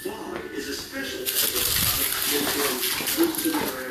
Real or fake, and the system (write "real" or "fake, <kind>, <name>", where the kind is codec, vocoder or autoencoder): real